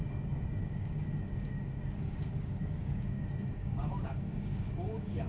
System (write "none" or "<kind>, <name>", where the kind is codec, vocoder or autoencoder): codec, DAC